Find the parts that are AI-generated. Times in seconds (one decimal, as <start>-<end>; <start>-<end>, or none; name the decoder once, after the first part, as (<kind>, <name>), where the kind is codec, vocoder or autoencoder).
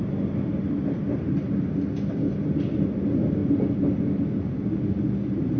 none